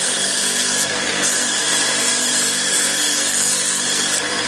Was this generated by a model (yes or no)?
yes